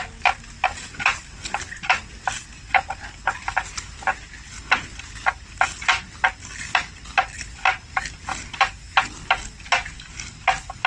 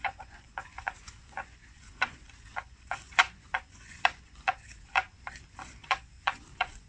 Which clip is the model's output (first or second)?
second